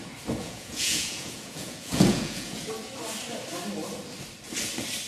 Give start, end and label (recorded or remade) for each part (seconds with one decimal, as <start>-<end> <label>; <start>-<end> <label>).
0.0-0.4 recorded; 0.4-2.7 remade; 2.7-5.1 recorded

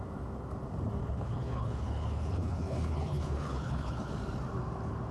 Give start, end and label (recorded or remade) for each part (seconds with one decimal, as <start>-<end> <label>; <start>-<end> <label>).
0.0-1.0 recorded; 1.0-4.1 remade; 4.1-5.1 recorded

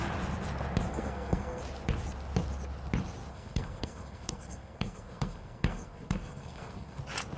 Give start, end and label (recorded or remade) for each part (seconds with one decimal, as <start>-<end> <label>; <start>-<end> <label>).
0.0-0.9 recorded; 0.9-1.6 remade; 1.6-3.3 recorded; 3.3-7.0 remade; 7.0-7.4 recorded

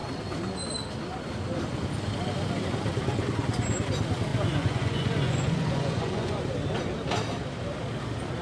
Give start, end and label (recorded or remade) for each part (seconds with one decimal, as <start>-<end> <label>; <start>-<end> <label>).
0.0-4.3 recorded; 4.3-6.4 remade; 6.4-8.4 recorded

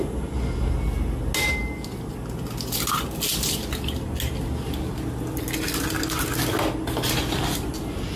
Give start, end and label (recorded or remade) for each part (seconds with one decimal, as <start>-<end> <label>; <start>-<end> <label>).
0.0-8.2 recorded

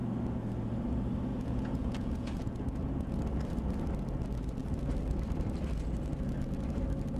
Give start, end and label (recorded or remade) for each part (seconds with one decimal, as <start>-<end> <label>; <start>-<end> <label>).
0.0-1.3 recorded; 1.3-3.2 remade; 3.2-7.2 recorded

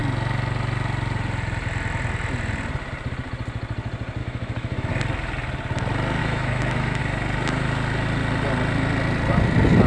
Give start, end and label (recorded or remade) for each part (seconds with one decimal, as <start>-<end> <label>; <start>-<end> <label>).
0.0-4.2 recorded; 4.2-4.9 remade; 4.9-6.2 recorded; 6.2-7.0 remade; 7.0-9.9 recorded